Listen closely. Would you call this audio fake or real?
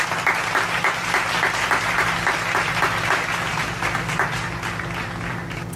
real